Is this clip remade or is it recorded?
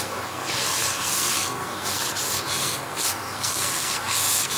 remade